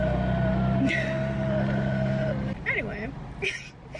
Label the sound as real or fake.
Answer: real